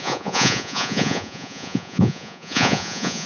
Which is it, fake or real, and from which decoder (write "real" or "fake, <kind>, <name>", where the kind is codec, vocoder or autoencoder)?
fake, vocoder, Vocos